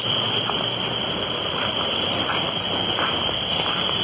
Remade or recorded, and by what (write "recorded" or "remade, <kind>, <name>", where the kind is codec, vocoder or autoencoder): recorded